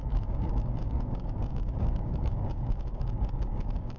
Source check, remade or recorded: remade